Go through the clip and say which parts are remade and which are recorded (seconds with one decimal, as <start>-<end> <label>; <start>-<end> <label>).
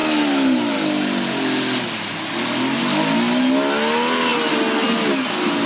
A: 0.0-5.7 recorded